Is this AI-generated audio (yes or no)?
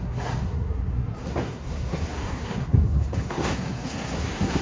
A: yes